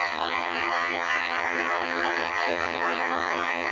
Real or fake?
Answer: fake